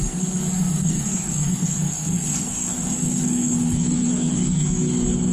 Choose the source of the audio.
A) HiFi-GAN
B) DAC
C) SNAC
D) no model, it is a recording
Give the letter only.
C